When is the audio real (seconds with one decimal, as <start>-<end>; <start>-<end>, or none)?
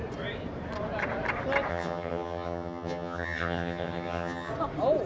0.0-1.7; 4.5-5.1